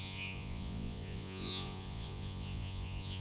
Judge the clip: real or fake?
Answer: fake